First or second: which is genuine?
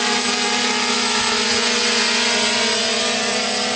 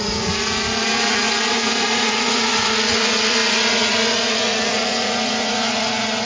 first